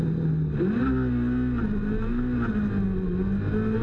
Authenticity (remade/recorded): recorded